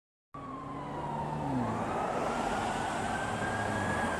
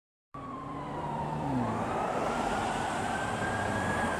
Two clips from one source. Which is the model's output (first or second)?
second